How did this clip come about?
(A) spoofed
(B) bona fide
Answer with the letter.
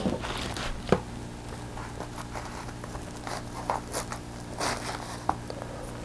B